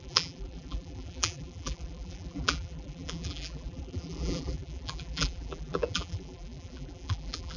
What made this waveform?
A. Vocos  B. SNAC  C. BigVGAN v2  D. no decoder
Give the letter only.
C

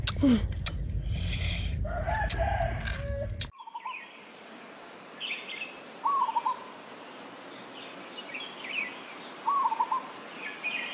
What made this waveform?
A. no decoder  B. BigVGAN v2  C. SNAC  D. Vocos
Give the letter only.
A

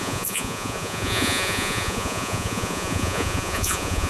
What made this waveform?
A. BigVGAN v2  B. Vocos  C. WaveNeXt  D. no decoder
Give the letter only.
B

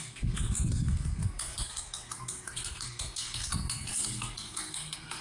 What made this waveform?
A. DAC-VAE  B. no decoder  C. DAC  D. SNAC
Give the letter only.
D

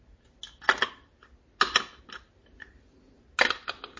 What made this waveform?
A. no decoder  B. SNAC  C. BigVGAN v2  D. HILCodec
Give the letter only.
A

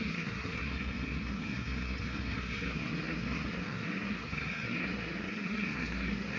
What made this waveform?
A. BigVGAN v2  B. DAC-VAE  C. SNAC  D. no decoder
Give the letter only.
C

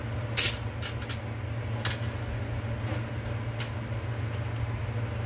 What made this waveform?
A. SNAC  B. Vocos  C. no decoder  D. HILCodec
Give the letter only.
C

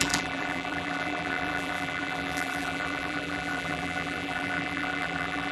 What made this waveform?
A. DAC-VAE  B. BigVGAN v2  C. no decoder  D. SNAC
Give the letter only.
B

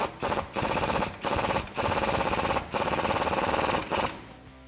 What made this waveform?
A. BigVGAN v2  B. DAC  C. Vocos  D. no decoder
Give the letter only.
D